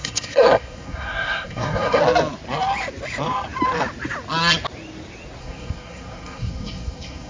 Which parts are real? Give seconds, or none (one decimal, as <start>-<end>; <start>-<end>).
2.0-5.4